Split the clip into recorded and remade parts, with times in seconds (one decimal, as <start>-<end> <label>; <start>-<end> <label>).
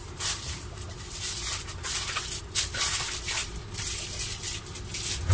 0.0-3.4 remade; 3.4-5.3 recorded